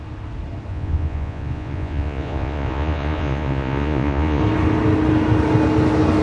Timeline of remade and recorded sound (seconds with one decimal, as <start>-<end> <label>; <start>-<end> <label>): 0.0-0.7 recorded; 0.7-4.4 remade; 4.4-6.2 recorded